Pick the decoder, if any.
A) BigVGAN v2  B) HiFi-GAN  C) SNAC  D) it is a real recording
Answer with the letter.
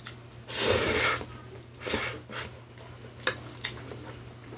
D